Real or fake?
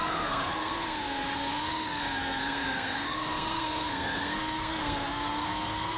fake